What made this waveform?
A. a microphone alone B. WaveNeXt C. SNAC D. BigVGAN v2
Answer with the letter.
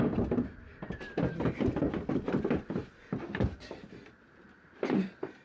D